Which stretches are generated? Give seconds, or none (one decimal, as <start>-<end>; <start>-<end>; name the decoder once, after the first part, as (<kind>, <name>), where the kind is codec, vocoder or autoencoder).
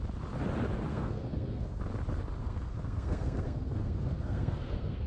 0.9-1.8 (codec, SNAC); 2.4-5.1